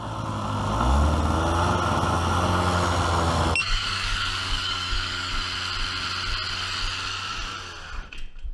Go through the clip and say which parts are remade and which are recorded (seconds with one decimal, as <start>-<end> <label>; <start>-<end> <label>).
0.0-3.6 recorded; 3.6-5.3 remade; 5.3-8.5 recorded